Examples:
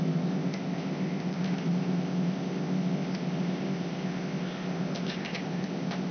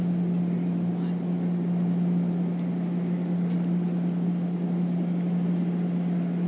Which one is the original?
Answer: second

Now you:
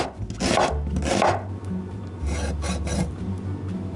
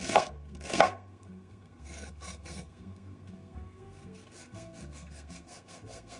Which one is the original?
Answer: first